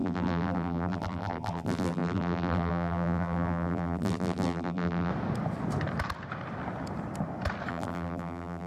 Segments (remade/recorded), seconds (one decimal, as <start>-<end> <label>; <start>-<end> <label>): 0.0-5.1 remade; 5.1-7.7 recorded; 7.7-8.7 remade